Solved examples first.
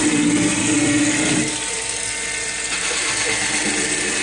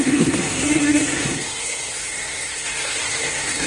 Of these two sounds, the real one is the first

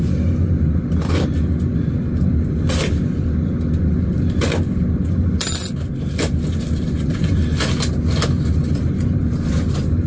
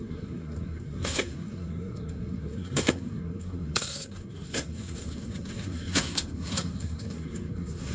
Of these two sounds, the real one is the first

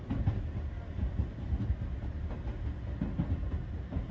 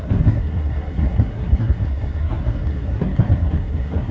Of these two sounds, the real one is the first